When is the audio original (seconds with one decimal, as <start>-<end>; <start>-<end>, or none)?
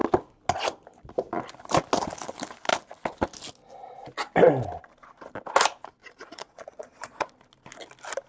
0.0-6.0; 7.3-8.3